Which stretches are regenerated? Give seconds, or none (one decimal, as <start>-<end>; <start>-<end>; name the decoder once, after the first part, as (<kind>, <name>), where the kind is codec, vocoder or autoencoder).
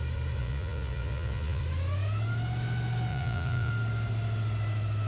0.4-1.6 (vocoder, Vocos); 3.1-3.7